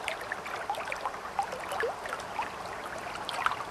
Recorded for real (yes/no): yes